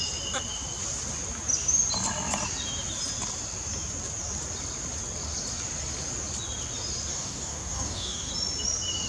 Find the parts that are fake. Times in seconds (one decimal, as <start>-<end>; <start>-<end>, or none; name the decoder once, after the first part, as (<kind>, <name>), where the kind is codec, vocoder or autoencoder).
7.1-8.3 (codec, DAC)